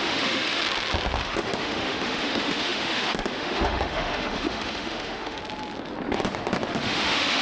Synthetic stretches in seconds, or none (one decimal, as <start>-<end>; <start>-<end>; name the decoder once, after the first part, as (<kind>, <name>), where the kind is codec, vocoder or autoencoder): 0.0-0.6 (autoencoder, DAC-VAE); 1.2-5.4; 6.7-7.4